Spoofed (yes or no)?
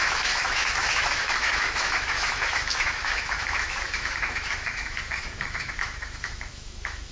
yes